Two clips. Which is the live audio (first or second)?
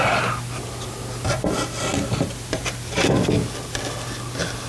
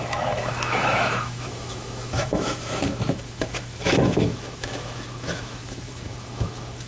first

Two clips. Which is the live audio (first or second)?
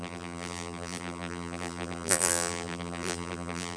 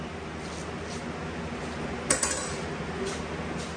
second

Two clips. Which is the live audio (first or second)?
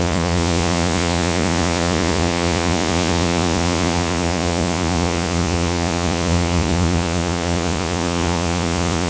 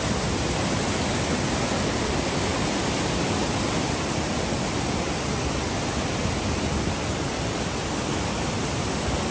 second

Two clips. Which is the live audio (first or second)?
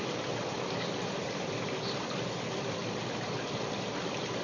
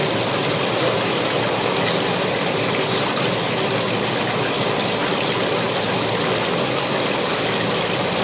second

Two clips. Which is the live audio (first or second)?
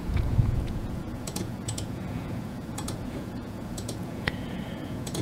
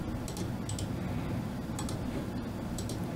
second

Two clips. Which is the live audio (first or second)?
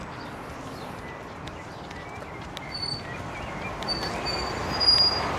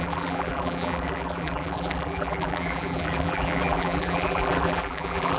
first